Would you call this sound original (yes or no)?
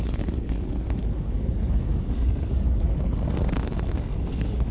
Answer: no